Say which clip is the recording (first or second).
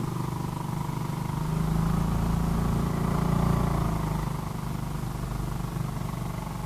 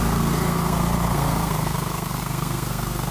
first